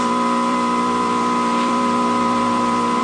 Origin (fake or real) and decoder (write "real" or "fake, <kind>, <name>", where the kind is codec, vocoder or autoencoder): fake, vocoder, BigVGAN v2